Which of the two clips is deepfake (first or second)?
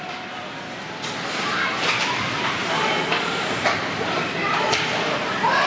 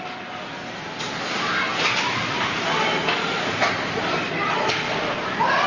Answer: first